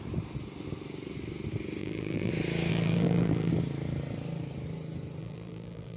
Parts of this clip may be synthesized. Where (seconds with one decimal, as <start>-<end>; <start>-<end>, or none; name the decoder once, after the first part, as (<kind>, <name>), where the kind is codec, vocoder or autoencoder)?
1.8-2.3 (vocoder, BigVGAN v2); 2.7-3.5; 5.2-6.0